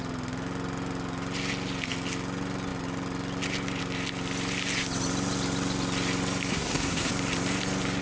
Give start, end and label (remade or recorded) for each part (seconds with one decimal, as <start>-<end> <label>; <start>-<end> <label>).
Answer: 0.0-6.5 recorded; 6.5-7.1 remade; 7.1-8.0 recorded